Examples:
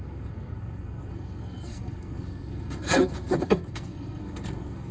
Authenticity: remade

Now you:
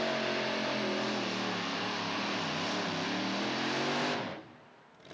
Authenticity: recorded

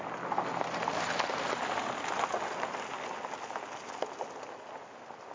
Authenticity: recorded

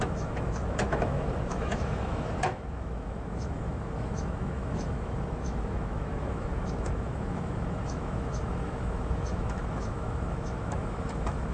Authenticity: remade